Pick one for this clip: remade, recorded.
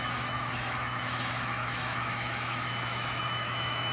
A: remade